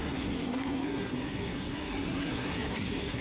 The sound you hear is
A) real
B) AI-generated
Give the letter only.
B